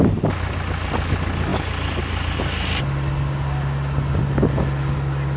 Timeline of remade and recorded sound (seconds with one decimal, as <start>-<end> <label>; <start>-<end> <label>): 0.0-5.4 recorded